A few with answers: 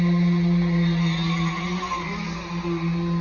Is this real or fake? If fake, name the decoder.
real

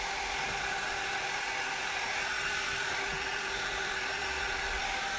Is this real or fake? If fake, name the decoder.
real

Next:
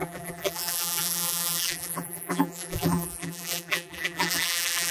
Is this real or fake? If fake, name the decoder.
fake, vocoder, BigVGAN v2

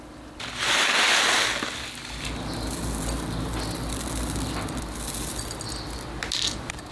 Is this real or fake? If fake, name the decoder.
real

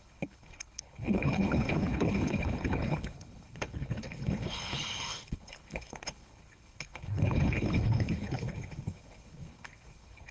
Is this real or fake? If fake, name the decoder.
fake, codec, HILCodec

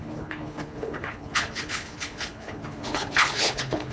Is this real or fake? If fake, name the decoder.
fake, codec, HILCodec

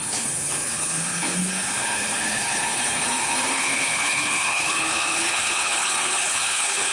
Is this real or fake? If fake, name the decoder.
fake, codec, HILCodec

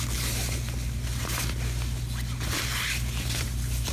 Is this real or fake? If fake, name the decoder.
real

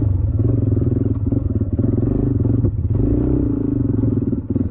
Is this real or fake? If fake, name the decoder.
real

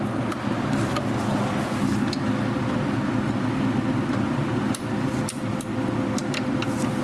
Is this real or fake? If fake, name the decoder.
real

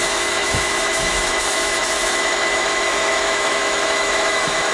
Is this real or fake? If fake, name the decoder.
fake, autoencoder, DAC-VAE